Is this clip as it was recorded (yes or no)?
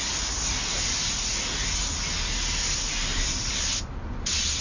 yes